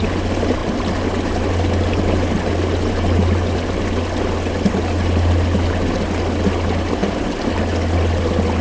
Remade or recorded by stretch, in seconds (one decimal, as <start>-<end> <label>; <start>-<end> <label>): 0.0-8.6 recorded